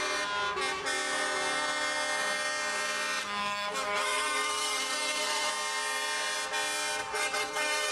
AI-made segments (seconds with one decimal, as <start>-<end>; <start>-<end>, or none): 3.2-5.5; 7.0-7.9